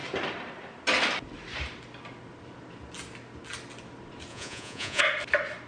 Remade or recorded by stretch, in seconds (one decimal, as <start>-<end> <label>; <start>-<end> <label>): 0.0-4.3 recorded; 4.3-5.0 remade; 5.0-5.7 recorded

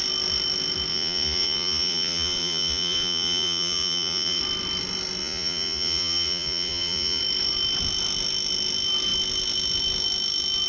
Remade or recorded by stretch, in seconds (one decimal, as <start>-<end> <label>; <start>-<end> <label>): 0.0-0.9 recorded; 0.9-4.4 remade; 4.4-5.2 recorded; 5.2-7.2 remade; 7.2-10.7 recorded

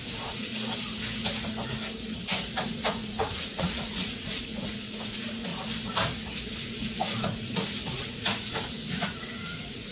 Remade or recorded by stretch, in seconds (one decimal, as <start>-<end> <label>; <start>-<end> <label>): 0.0-0.5 remade; 0.5-2.6 recorded; 2.6-5.5 remade; 5.5-6.5 recorded; 6.5-9.9 remade

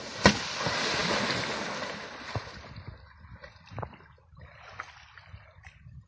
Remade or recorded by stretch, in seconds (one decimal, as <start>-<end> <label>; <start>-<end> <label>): 0.0-6.1 recorded